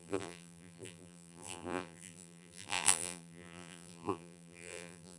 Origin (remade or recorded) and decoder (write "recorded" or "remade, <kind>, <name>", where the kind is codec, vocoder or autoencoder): remade, vocoder, BigVGAN v2